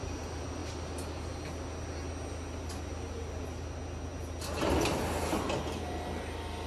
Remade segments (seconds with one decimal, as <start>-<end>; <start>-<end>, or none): none